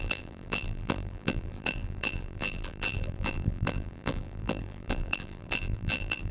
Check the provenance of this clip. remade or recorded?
remade